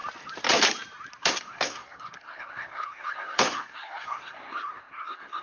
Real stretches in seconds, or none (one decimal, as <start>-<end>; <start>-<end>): 0.0-1.2